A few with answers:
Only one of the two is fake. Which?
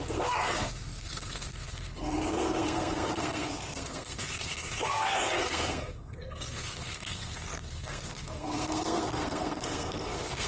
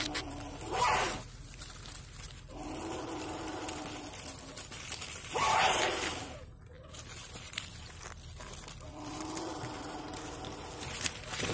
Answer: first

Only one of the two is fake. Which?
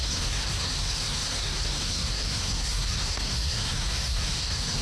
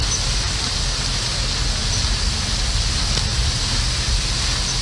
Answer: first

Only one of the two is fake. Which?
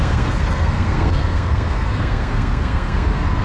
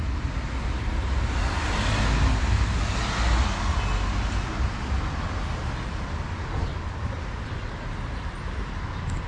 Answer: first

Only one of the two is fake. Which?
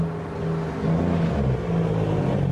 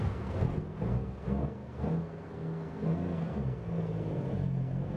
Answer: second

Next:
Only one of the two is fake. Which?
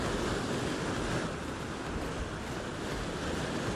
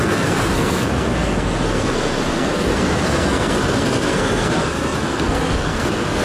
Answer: second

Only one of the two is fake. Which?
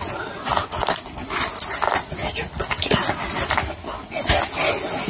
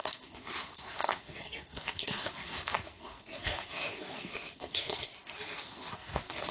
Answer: second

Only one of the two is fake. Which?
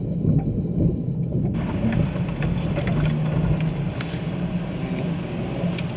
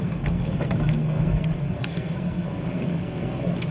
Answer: second